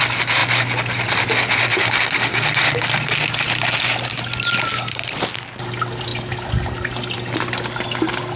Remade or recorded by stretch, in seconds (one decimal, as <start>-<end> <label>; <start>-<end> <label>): 0.0-8.4 recorded